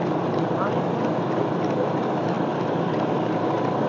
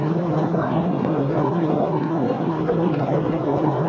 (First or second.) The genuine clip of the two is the first